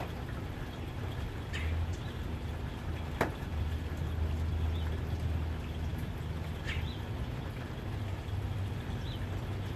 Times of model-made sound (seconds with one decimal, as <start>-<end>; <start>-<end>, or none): none